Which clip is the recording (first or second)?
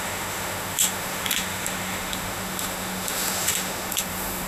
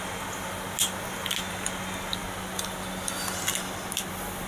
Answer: second